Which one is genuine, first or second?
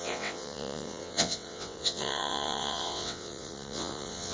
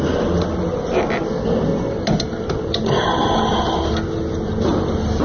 second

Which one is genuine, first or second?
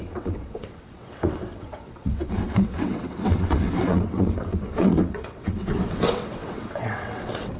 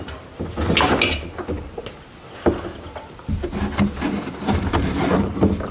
second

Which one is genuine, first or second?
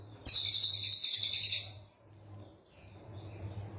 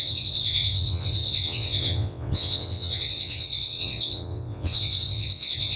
first